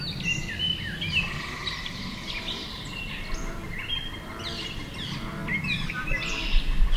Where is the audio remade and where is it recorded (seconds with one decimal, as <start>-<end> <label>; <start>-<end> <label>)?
0.0-1.6 recorded; 1.6-2.4 remade; 2.4-5.4 recorded; 5.4-6.3 remade; 6.3-7.0 recorded